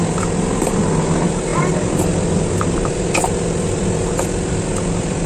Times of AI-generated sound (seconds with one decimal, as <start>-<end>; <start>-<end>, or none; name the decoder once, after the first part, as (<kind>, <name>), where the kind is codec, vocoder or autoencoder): 0.0-5.3 (vocoder, BigVGAN v2)